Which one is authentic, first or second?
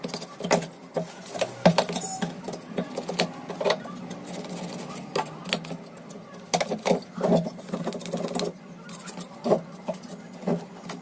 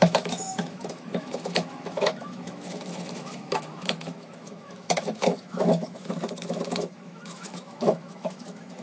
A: first